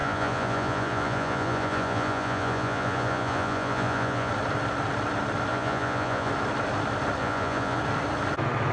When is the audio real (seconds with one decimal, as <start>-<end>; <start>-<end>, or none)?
4.3-5.5; 6.3-7.2; 7.8-8.7